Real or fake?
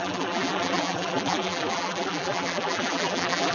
fake